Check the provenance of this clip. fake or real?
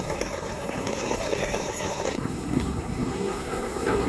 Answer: fake